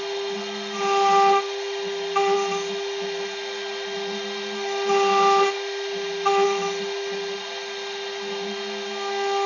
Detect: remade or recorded recorded